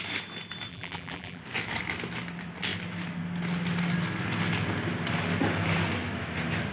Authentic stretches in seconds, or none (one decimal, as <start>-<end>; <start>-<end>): 0.0-0.7; 1.4-6.7